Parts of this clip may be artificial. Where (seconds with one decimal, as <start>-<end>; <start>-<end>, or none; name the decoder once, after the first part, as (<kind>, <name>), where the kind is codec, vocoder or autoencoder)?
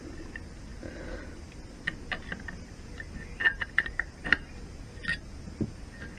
3.5-4.2 (vocoder, BigVGAN v2)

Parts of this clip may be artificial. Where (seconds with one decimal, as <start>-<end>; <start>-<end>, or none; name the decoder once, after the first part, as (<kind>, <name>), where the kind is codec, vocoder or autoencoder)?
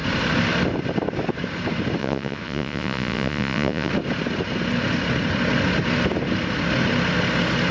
2.0-3.9 (vocoder, Vocos)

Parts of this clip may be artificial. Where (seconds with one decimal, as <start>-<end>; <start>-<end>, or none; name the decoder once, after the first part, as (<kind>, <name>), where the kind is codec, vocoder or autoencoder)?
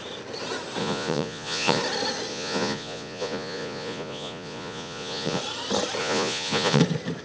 0.8-1.8 (vocoder, Vocos); 2.3-5.4; 6.0-6.8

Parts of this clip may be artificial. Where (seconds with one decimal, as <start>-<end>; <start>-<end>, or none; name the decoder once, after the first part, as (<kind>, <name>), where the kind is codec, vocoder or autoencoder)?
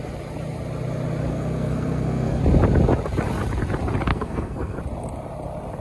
1.3-2.4 (codec, SNAC); 4.1-4.8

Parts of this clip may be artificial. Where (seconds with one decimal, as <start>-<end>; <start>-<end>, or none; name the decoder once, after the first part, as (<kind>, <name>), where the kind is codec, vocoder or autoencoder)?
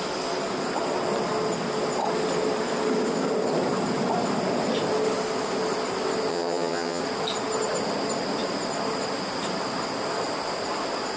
6.3-7.0 (vocoder, HiFi-GAN)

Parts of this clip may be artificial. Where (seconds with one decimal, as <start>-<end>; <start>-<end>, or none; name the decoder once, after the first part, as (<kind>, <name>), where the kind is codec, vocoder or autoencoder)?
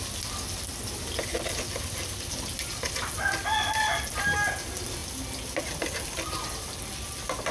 none